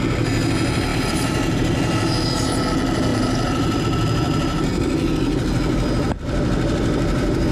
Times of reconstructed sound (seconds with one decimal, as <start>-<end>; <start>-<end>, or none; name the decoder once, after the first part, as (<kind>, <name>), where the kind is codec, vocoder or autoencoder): 0.9-2.1 (vocoder, BigVGAN v2); 3.1-3.8